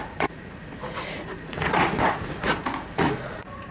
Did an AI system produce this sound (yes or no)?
yes